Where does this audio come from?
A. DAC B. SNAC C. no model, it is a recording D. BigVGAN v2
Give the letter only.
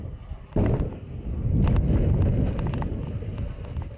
C